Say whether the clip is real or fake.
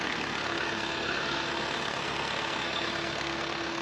fake